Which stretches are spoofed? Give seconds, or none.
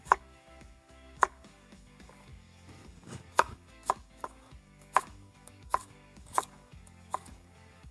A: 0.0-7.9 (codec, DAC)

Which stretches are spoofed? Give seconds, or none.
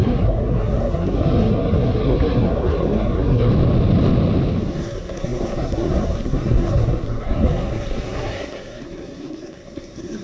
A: 0.0-3.5 (codec, SNAC); 4.6-10.2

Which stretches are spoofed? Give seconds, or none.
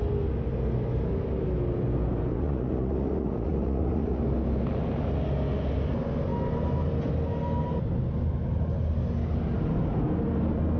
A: 2.3-4.2 (vocoder, Vocos)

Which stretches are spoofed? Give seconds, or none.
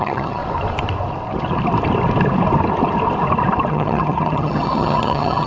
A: 0.0-0.4 (vocoder, HiFi-GAN); 3.7-5.5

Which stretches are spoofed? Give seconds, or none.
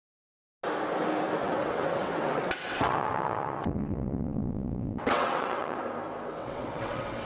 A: 1.4-5.8 (vocoder, WaveNeXt); 6.4-7.3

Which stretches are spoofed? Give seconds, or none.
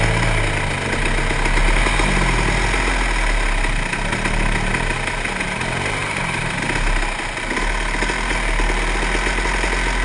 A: 6.0-6.5 (vocoder, BigVGAN v2)